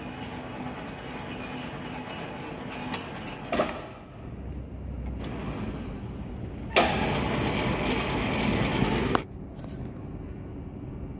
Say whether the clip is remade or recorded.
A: recorded